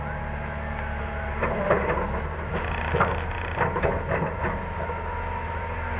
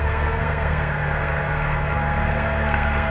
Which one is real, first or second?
first